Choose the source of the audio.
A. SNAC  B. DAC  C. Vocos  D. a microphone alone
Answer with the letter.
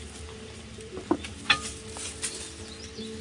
D